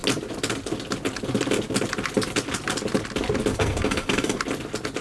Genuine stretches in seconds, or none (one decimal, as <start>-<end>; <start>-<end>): 0.0-3.5; 4.4-5.0